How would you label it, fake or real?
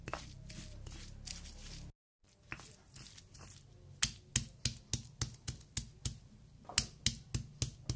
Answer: real